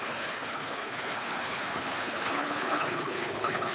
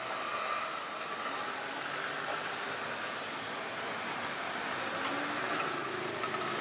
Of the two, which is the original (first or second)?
second